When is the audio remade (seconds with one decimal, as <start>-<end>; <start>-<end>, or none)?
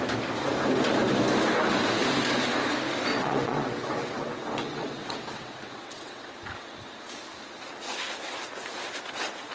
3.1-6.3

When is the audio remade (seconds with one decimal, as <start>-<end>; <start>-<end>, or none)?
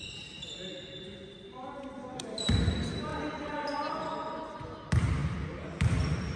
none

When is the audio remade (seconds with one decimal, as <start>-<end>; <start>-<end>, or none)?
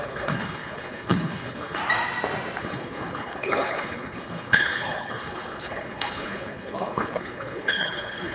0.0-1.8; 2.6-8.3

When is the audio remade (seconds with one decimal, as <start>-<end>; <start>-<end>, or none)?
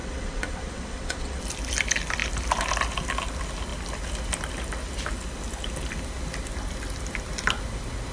0.0-1.4